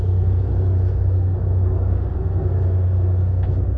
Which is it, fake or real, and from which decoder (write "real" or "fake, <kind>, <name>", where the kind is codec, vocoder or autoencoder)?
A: fake, codec, SNAC